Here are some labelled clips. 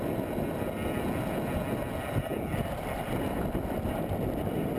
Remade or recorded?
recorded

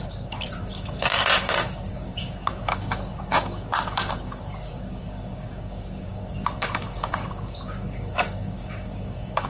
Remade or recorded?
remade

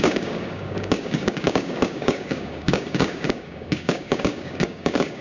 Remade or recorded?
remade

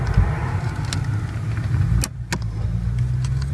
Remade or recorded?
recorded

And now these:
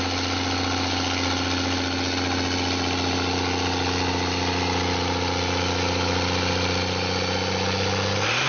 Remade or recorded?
recorded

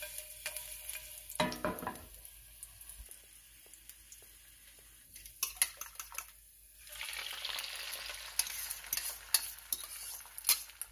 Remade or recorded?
recorded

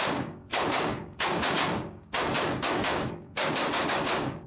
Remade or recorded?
remade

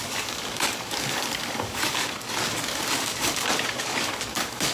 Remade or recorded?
remade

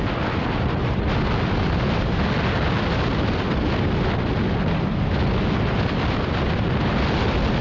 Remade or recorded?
recorded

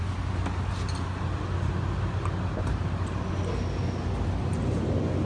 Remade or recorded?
recorded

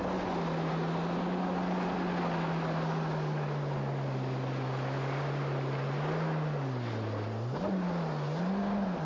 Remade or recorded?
recorded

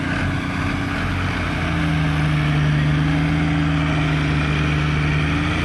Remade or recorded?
recorded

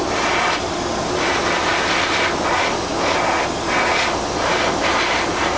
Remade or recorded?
recorded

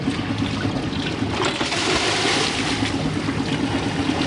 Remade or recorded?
recorded